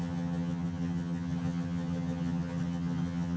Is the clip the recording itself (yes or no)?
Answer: no